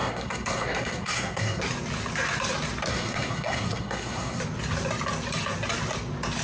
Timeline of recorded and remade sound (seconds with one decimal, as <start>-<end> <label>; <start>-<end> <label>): 0.0-1.6 remade; 1.6-2.9 recorded; 2.9-4.4 remade; 4.4-6.4 recorded